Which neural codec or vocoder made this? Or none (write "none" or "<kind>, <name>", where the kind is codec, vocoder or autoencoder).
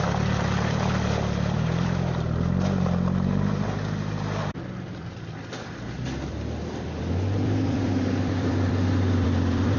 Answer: vocoder, BigVGAN v2